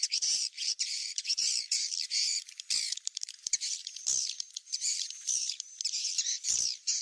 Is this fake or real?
fake